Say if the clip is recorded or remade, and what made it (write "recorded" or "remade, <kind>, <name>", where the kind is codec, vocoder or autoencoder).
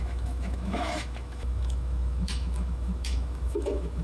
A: remade, autoencoder, DAC-VAE